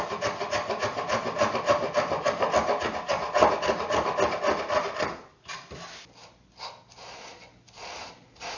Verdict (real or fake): real